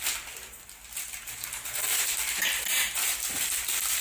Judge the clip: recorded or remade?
recorded